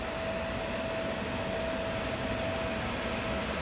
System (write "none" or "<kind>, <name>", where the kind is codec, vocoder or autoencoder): none